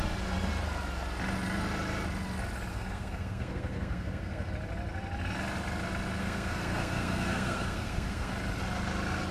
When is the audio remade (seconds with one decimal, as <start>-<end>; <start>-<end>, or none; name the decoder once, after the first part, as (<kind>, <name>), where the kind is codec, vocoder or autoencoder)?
2.7-4.5 (codec, SNAC); 6.2-8.3